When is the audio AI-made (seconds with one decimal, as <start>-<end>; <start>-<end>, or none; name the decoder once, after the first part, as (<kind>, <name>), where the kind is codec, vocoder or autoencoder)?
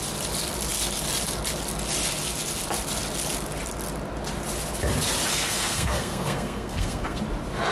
5.3-7.2 (codec, SNAC)